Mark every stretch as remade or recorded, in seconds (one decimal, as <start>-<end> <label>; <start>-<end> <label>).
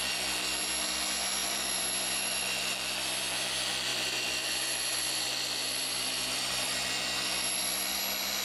0.0-1.4 recorded; 1.4-2.6 remade; 2.6-3.9 recorded; 3.9-8.0 remade; 8.0-8.4 recorded